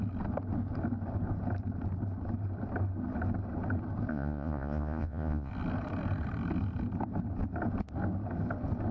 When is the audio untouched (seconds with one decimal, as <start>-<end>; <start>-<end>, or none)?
0.0-4.1; 5.5-8.9